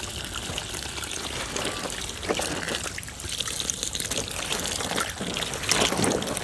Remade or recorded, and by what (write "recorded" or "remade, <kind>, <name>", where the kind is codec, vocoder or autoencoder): recorded